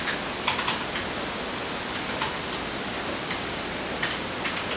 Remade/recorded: recorded